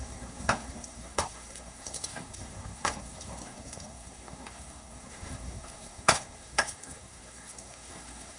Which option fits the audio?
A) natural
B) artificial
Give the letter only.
B